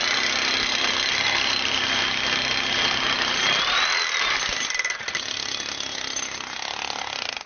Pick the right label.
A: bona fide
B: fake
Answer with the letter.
A